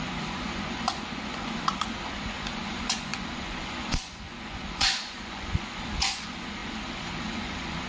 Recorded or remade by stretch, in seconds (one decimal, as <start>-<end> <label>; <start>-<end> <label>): 0.0-7.9 remade